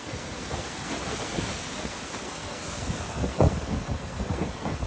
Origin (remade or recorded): remade